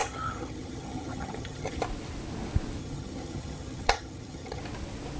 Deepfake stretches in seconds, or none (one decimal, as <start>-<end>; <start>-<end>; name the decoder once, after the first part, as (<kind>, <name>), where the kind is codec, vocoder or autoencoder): 0.0-1.8 (vocoder, HiFi-GAN); 2.8-4.6